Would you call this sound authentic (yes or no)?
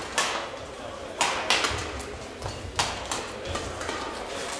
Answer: yes